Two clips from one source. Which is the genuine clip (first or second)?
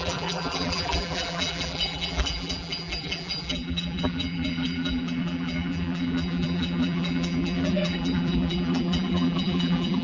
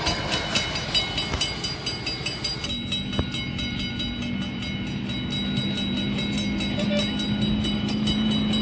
second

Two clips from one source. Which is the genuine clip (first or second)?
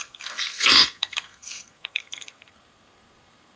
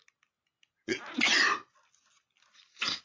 second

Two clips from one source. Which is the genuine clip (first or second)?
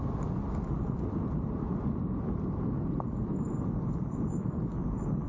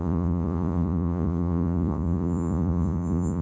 first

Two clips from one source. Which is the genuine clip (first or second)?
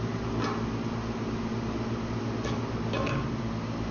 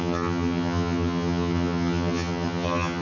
first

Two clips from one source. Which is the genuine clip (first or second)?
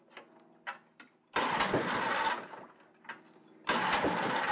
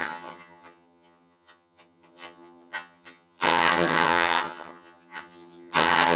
first